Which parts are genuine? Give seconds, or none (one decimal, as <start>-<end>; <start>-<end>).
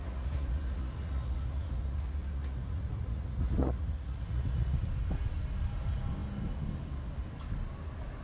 4.9-8.2